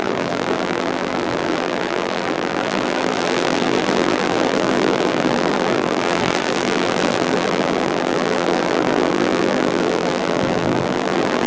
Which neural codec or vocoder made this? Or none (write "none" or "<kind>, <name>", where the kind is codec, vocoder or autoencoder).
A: vocoder, BigVGAN v2